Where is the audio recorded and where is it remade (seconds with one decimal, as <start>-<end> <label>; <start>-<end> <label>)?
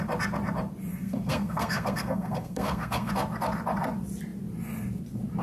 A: 0.0-0.9 recorded; 0.9-3.1 remade; 3.1-5.4 recorded